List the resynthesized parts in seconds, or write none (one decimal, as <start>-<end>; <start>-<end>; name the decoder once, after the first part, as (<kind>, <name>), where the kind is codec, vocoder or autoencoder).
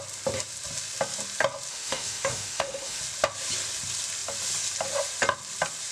1.7-3.0 (autoencoder, DAC-VAE)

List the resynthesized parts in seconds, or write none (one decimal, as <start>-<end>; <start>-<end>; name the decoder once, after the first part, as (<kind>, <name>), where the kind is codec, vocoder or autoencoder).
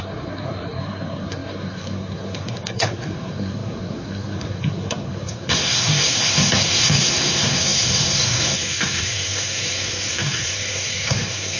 0.0-11.6 (codec, SNAC)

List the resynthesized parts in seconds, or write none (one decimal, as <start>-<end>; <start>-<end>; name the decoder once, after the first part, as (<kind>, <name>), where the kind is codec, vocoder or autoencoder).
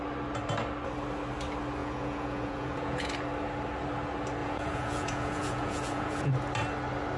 1.8-3.1 (vocoder, Vocos); 4.4-6.3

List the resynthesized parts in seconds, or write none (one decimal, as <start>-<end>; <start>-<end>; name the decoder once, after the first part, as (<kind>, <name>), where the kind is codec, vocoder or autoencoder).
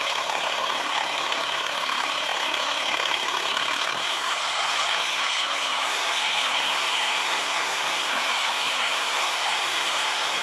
0.0-10.4 (codec, SNAC)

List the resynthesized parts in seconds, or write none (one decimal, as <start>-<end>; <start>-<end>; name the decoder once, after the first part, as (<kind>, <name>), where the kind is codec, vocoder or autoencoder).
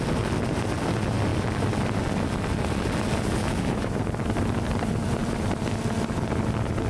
3.4-4.0 (autoencoder, DAC-VAE)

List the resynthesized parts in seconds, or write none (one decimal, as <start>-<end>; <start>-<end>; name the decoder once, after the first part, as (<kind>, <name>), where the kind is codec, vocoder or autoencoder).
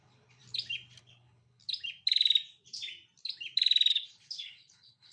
0.0-0.4 (codec, HILCodec); 1.0-1.6; 3.9-5.1